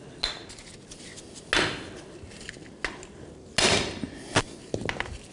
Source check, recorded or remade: recorded